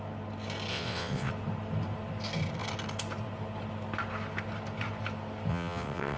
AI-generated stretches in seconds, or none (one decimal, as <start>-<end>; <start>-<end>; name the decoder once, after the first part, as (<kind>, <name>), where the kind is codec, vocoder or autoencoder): 0.7-1.3 (vocoder, WaveNeXt); 5.5-6.2

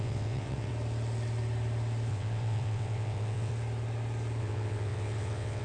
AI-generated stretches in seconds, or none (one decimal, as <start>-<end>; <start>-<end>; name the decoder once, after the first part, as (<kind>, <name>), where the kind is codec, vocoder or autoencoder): 0.0-0.7 (vocoder, WaveNeXt); 2.1-3.5; 4.4-5.6

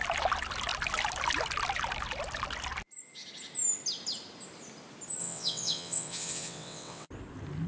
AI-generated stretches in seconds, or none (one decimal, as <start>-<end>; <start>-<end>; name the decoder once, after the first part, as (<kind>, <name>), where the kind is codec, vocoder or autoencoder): 5.2-7.1 (vocoder, WaveNeXt)